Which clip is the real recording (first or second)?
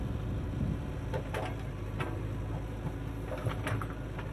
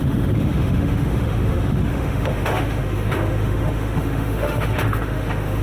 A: first